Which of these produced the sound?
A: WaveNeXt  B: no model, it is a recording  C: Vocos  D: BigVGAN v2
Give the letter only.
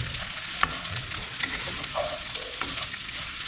C